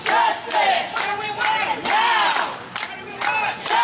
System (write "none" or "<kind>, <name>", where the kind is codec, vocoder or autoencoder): none